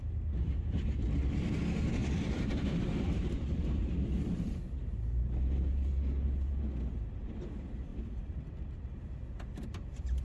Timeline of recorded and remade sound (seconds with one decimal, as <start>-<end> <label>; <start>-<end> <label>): 0.0-2.0 recorded; 2.0-4.6 remade; 4.6-7.9 recorded; 7.9-10.2 remade